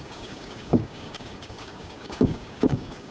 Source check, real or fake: fake